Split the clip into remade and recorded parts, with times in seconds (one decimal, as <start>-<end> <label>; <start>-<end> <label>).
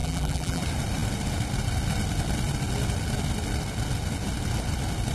0.0-0.6 remade; 0.6-5.1 recorded